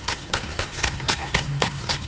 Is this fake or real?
fake